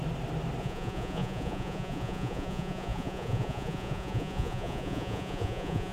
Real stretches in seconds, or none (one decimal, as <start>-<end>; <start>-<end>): 0.0-0.6